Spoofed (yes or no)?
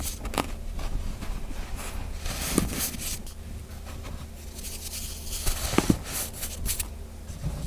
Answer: no